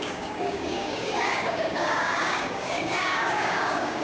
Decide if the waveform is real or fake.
fake